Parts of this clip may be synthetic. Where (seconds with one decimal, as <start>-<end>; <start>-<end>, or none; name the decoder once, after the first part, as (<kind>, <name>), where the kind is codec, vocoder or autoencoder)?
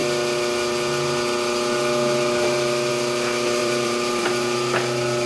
3.6-4.3 (vocoder, BigVGAN v2)